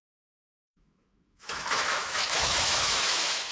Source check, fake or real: fake